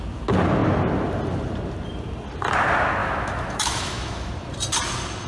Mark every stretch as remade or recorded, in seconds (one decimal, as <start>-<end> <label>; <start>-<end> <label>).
0.0-3.0 recorded; 3.0-4.3 remade; 4.3-5.3 recorded